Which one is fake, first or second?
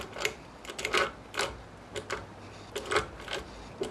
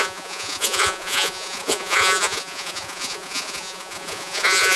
second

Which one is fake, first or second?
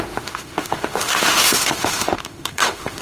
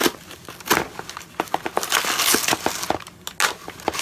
first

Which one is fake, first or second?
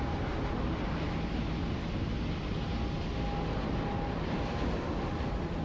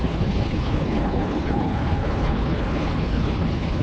second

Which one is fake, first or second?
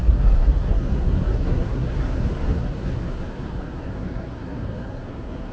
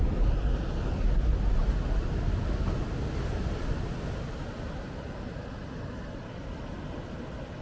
first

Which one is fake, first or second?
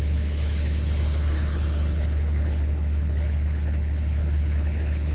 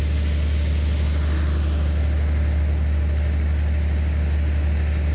first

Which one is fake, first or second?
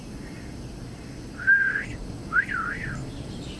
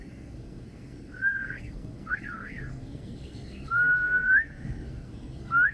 second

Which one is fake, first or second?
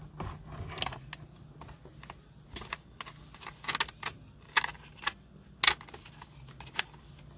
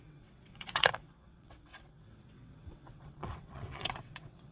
second